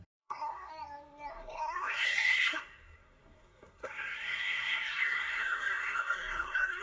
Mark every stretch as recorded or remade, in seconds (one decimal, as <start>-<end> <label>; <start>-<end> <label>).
0.0-0.7 remade; 0.7-1.3 recorded; 1.3-6.8 remade